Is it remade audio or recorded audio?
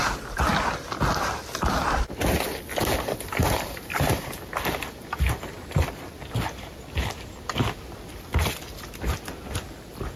recorded